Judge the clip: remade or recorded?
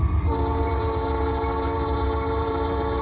remade